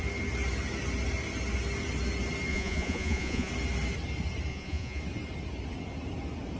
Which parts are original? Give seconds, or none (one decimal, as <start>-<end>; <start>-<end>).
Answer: 0.0-2.5; 3.5-4.5; 5.0-6.6

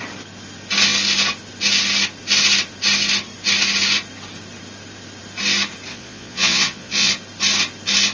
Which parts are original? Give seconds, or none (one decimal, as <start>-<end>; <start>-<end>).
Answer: 0.0-5.9; 7.1-8.1